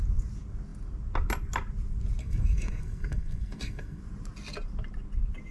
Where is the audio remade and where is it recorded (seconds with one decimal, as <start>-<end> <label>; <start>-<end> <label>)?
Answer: 0.0-2.2 recorded; 2.2-4.0 remade; 4.0-5.5 recorded